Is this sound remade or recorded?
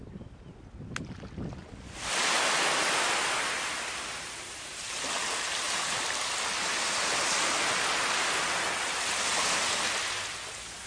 recorded